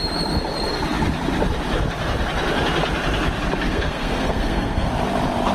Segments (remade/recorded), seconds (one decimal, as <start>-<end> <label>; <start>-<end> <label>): 0.0-3.7 recorded; 3.7-4.9 remade; 4.9-5.5 recorded